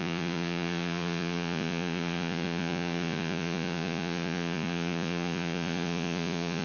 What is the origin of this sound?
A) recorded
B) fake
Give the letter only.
B